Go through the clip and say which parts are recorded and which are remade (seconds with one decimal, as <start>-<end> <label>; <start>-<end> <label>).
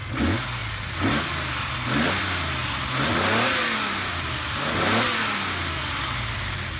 0.0-6.8 recorded